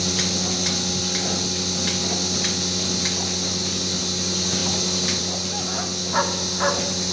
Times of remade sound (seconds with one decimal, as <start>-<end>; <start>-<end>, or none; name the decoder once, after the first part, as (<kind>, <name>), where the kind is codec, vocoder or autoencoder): none